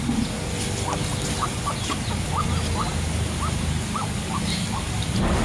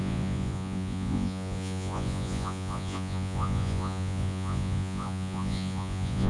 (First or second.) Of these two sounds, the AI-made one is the second